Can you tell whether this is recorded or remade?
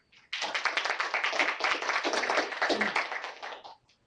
recorded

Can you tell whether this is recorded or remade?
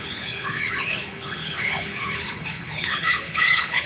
remade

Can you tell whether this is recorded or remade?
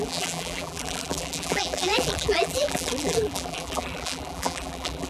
remade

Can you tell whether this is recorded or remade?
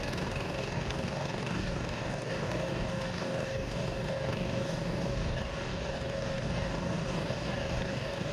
remade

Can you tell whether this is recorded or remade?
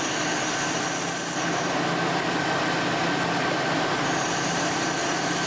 recorded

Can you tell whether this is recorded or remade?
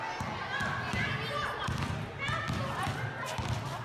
recorded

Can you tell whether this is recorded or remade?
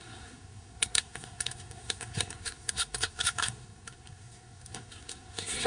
remade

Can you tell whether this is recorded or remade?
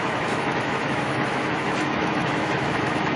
remade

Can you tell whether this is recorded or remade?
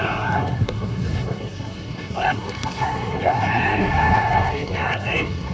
remade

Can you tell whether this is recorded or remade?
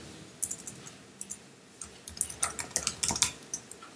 recorded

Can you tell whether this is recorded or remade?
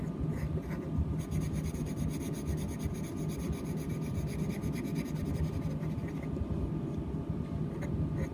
recorded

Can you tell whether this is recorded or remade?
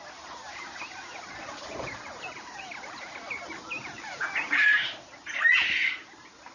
remade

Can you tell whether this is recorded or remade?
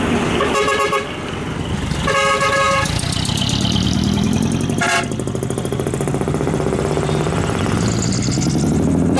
recorded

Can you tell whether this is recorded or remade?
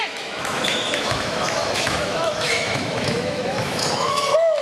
remade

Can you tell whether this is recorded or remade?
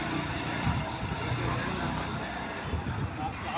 recorded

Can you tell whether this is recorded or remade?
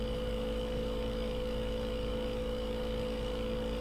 remade